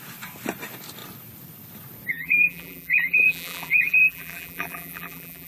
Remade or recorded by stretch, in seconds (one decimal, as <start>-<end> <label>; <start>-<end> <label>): 0.0-2.1 recorded; 2.1-5.5 remade